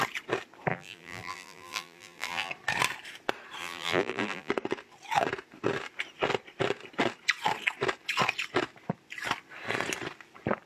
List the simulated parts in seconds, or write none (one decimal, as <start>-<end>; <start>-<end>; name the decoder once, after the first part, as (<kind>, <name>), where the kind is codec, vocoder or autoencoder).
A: 0.7-2.5 (vocoder, BigVGAN v2); 3.6-4.5